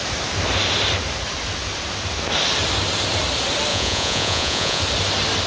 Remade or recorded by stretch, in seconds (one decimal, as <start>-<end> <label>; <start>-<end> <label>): 0.0-3.7 recorded; 3.7-4.8 remade; 4.8-5.5 recorded